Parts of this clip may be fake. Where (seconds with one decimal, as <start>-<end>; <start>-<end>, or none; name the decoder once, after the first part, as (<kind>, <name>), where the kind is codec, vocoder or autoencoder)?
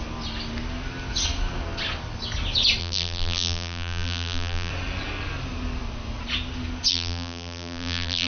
2.8-4.7 (vocoder, BigVGAN v2); 6.9-8.3